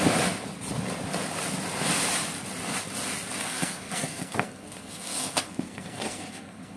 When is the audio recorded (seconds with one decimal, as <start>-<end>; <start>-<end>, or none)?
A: 0.0-3.4